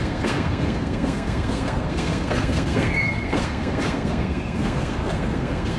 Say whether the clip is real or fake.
fake